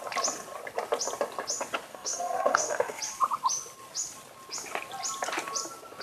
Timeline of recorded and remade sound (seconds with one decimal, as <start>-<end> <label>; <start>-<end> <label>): 0.0-1.9 recorded; 1.9-3.0 remade; 3.0-6.0 recorded